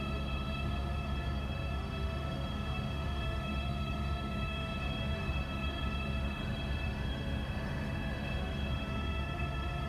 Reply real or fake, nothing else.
fake